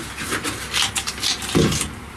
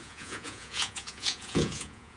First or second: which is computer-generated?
second